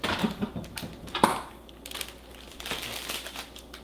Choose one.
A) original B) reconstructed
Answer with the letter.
A